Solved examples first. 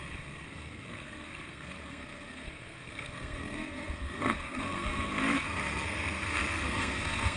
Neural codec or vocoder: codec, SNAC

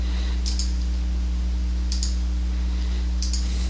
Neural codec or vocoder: none